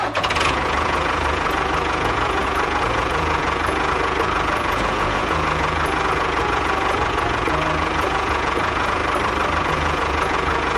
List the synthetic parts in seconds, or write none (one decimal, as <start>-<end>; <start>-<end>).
0.0-9.0; 9.6-10.8